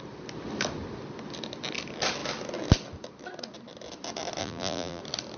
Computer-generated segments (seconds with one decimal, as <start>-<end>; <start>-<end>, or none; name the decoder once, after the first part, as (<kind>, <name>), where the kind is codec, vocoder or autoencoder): 4.4-5.0 (vocoder, BigVGAN v2)